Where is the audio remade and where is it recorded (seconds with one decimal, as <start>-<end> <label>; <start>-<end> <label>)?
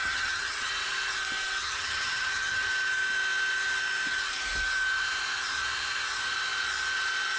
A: 0.0-0.7 remade; 0.7-1.6 recorded; 1.6-2.7 remade; 2.7-7.4 recorded